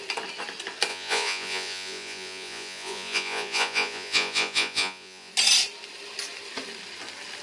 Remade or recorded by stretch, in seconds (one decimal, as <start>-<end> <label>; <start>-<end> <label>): 0.0-0.9 recorded; 0.9-5.3 remade; 5.3-7.4 recorded